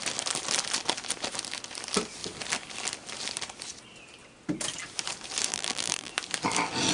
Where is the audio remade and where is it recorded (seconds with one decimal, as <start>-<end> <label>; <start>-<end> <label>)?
0.0-5.5 recorded; 5.5-6.1 remade; 6.1-6.9 recorded